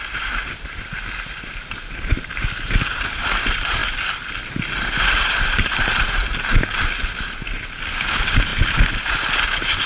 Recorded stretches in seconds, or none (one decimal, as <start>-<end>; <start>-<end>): 3.8-5.0; 6.2-7.9; 8.5-9.9